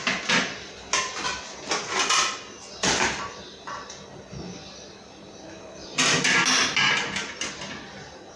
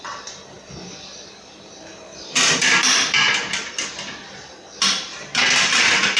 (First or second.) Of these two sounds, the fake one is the second